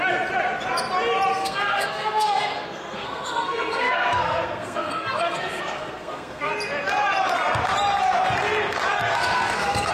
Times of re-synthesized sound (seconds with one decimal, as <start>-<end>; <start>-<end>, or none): 1.3-6.5; 9.0-9.9